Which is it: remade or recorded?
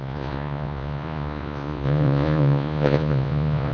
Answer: remade